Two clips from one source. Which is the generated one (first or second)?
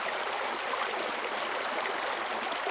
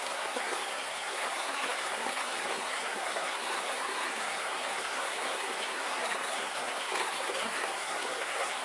second